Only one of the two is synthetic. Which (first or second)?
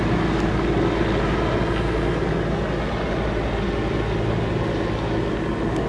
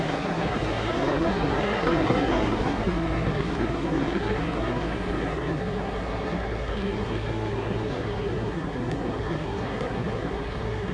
second